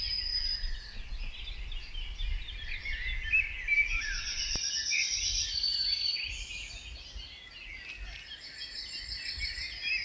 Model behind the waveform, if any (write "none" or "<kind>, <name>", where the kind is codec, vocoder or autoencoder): none